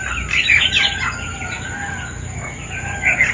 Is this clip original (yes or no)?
no